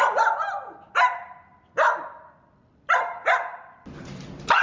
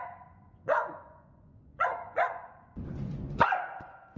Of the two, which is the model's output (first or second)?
second